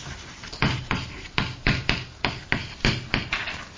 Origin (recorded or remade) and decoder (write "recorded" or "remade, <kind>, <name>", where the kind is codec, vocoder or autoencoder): remade, vocoder, BigVGAN v2